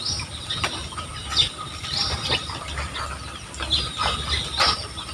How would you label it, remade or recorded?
recorded